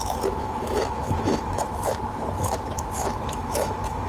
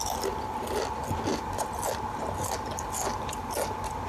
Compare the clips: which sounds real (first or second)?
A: second